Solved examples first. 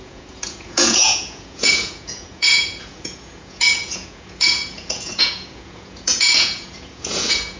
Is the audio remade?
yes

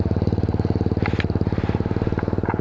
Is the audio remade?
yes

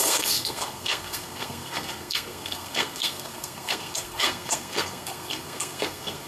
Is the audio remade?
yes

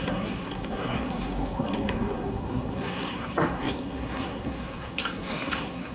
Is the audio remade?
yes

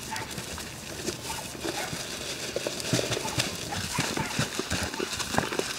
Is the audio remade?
no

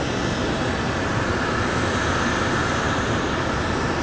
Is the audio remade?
no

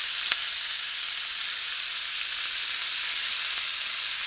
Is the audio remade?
no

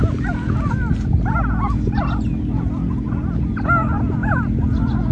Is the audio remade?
no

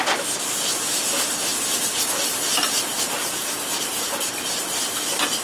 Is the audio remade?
no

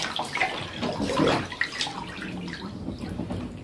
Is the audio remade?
no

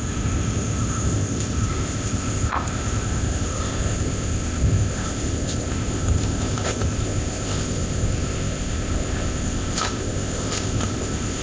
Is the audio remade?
yes